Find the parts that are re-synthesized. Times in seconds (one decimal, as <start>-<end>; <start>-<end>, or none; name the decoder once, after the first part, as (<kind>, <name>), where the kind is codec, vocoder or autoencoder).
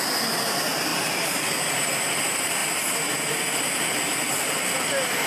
none